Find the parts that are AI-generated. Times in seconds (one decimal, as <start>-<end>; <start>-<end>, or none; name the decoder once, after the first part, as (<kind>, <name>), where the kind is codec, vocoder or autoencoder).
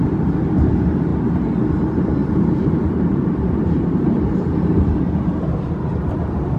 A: 2.2-6.1 (vocoder, BigVGAN v2)